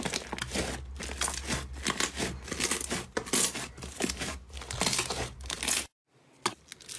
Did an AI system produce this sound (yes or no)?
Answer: no